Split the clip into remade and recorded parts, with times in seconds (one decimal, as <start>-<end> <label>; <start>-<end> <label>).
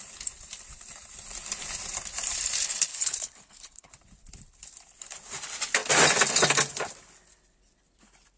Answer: 0.0-2.9 recorded; 2.9-3.9 remade; 3.9-8.4 recorded